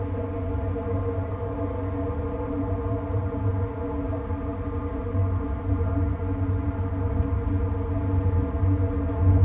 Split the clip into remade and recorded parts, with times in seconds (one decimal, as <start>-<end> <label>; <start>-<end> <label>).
0.0-9.4 recorded